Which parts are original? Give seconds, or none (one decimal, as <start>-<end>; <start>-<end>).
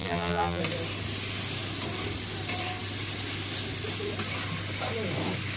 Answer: 0.6-5.6